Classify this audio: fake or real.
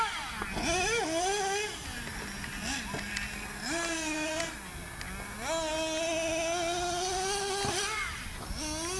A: real